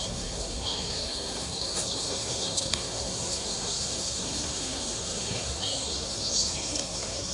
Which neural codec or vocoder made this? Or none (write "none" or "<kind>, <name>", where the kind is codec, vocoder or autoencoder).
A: codec, SNAC